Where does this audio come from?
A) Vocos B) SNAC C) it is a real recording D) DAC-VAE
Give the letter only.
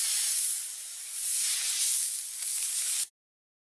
C